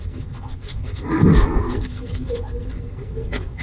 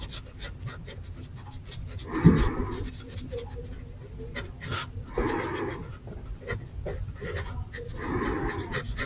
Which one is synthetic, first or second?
first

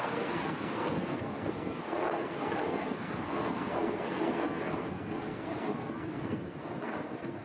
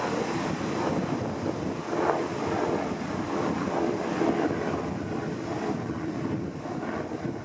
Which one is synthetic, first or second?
first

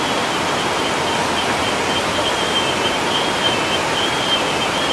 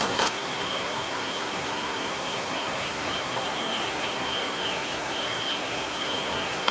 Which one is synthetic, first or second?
second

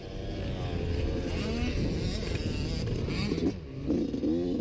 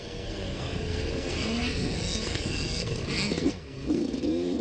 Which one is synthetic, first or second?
second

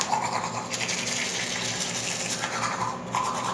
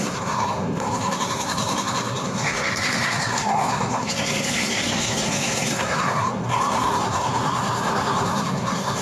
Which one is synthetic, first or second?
second